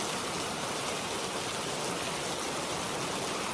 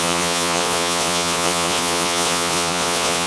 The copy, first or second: second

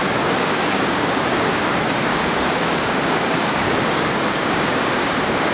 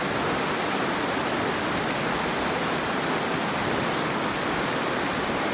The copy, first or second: first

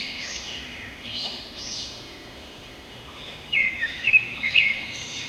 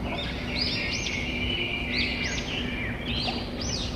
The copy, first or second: first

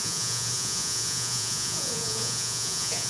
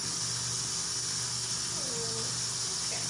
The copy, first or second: first